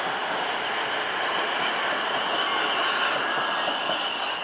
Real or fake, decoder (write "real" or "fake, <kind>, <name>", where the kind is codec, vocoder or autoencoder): real